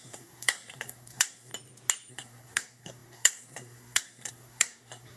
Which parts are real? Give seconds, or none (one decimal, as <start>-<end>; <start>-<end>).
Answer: 1.5-2.1

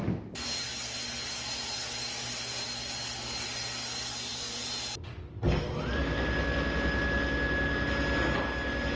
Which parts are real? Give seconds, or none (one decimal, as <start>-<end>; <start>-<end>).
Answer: 0.0-9.0

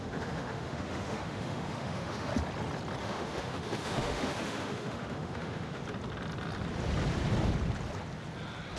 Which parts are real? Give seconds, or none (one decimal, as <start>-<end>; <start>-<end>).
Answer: 2.3-3.0; 5.8-8.8

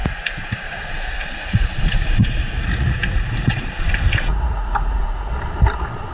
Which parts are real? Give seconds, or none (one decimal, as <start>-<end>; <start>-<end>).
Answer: 3.7-4.3; 5.3-6.1

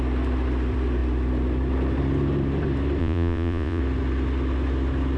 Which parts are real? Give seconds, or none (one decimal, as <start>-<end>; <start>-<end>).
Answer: 0.0-3.0; 3.8-5.2

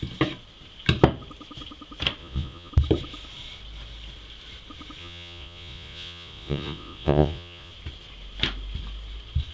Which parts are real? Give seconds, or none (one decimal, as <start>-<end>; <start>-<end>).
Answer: 0.0-2.2; 2.7-5.0; 7.7-9.5

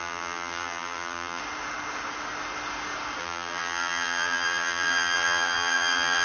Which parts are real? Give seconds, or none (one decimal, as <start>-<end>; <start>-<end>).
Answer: 1.4-3.2